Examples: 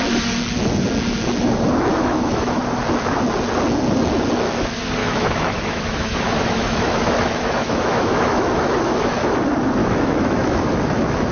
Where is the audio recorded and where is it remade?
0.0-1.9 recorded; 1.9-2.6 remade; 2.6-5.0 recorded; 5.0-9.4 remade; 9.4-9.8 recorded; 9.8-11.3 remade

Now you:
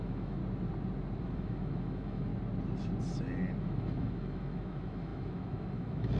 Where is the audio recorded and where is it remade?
0.0-0.4 remade; 0.4-1.2 recorded; 1.2-2.3 remade; 2.3-3.6 recorded; 3.6-6.2 remade

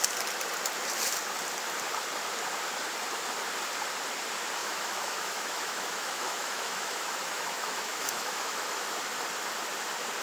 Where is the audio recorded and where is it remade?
0.0-4.6 recorded; 4.6-9.0 remade; 9.0-10.2 recorded

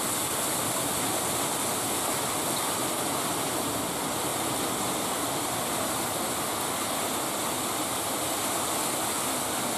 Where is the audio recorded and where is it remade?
0.0-9.8 recorded